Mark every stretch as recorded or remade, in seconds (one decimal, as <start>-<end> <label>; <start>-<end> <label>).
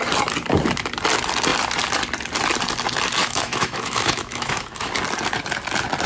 0.0-3.2 recorded; 3.2-4.9 remade; 4.9-6.1 recorded